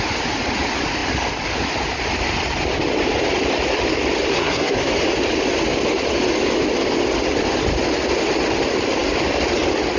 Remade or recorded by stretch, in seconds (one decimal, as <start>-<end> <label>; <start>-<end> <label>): 0.0-4.3 recorded; 4.3-4.9 remade; 4.9-10.0 recorded